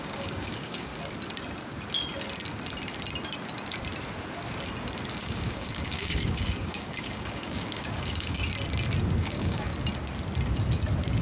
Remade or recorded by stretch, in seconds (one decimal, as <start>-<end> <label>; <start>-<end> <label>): 0.0-0.9 remade; 0.9-5.1 recorded; 5.1-8.4 remade; 8.4-9.2 recorded; 9.2-9.7 remade; 9.7-11.2 recorded